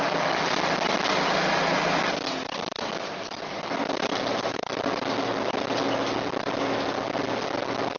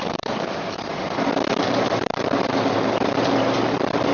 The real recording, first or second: first